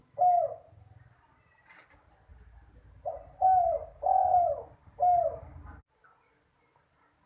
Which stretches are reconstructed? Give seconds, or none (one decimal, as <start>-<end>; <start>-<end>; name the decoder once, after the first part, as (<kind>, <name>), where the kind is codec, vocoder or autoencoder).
none